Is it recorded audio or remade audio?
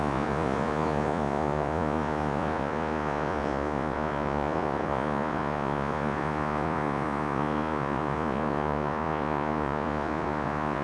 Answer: remade